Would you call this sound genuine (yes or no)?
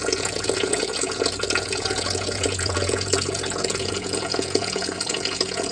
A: no